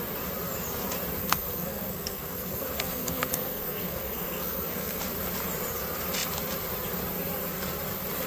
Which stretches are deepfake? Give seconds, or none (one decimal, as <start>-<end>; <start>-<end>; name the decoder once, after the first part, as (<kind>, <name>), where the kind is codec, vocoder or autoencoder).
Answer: 1.2-5.0 (codec, SNAC)